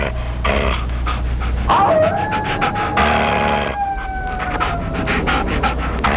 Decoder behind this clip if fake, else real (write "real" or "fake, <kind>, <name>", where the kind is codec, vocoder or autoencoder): real